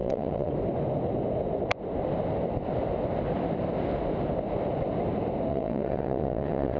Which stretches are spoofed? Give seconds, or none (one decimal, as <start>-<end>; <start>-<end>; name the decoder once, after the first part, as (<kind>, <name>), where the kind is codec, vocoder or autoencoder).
0.0-0.5 (vocoder, WaveNeXt); 5.5-6.8